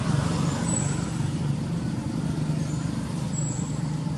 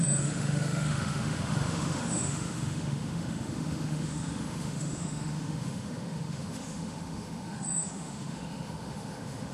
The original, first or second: first